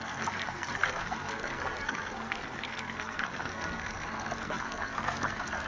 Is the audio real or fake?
fake